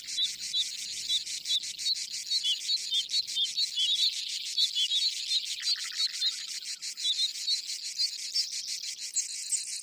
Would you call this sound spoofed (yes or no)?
no